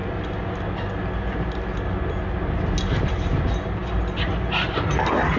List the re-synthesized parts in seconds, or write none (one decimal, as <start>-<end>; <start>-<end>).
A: none